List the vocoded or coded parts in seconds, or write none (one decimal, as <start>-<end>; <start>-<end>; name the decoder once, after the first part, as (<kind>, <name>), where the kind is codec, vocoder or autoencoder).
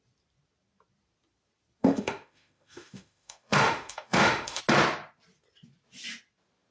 1.8-4.6 (autoencoder, DAC-VAE)